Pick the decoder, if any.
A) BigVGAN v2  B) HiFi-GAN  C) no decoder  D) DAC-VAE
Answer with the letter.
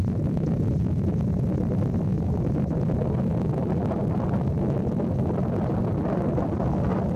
C